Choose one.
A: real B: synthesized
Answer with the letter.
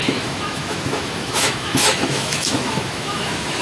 B